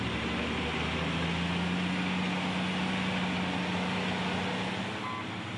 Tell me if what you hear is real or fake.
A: real